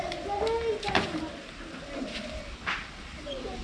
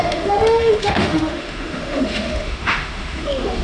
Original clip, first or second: first